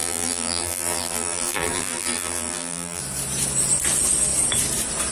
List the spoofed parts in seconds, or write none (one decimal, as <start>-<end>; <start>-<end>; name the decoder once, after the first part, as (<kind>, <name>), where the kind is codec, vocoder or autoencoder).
0.0-3.0 (vocoder, BigVGAN v2)